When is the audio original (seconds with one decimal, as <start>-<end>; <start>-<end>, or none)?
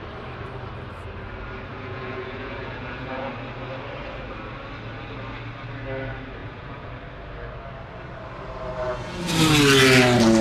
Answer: 0.0-1.7; 3.3-6.4; 6.9-10.4